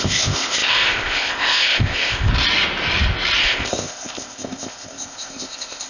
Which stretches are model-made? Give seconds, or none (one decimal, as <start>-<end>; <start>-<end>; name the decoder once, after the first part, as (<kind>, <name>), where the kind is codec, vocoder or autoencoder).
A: 0.0-2.3 (codec, ZipCodec); 3.4-5.9